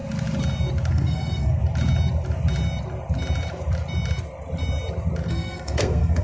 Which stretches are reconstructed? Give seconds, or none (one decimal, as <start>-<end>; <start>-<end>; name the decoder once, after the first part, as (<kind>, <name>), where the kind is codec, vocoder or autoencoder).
0.9-1.6 (codec, SNAC); 5.3-6.2